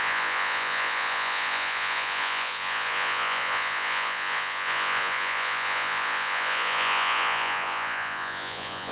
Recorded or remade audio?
remade